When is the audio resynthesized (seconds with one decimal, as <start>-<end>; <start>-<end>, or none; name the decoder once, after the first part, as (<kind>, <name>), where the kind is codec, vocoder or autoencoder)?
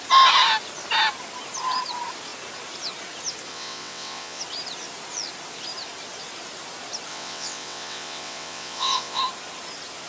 3.5-4.4 (vocoder, WaveNeXt); 7.1-9.2